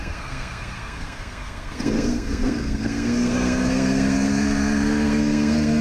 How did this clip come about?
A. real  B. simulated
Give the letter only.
B